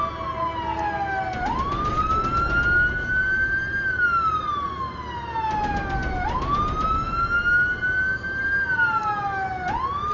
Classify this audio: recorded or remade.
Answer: recorded